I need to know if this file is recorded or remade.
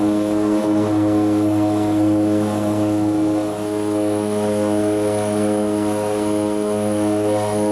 remade